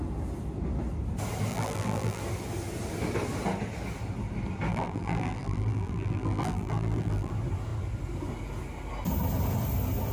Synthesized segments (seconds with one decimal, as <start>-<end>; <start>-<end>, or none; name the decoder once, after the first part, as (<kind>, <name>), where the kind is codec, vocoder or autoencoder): 1.5-2.2 (vocoder, BigVGAN v2); 4.7-7.3